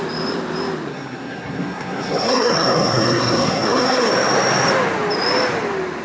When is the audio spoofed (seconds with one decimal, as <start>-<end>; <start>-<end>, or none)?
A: 0.9-4.1